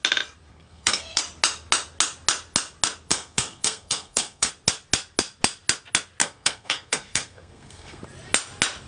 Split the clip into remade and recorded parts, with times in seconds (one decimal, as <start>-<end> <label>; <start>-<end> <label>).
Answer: 0.0-0.5 recorded; 0.5-1.2 remade; 1.2-3.1 recorded; 3.1-4.5 remade; 4.5-6.2 recorded; 6.2-8.0 remade; 8.0-8.9 recorded